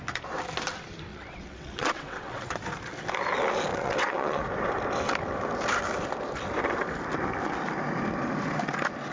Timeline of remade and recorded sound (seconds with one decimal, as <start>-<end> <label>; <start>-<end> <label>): 0.0-1.1 recorded; 1.1-2.5 remade; 2.5-3.7 recorded; 3.7-4.4 remade; 4.4-9.1 recorded

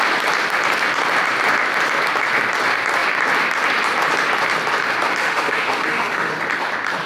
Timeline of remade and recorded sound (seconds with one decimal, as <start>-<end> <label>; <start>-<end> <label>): 0.0-5.2 recorded; 5.2-6.3 remade; 6.3-7.1 recorded